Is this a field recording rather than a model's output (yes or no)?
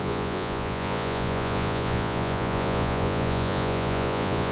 no